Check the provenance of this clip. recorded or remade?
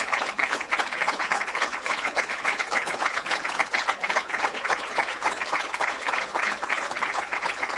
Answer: remade